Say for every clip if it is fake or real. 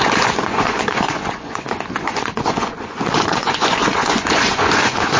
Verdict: fake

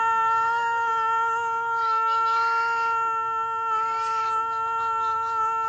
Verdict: real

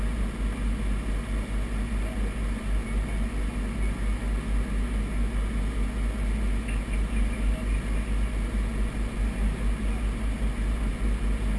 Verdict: real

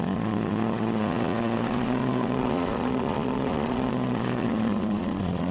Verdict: fake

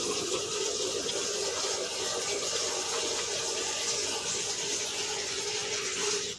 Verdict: fake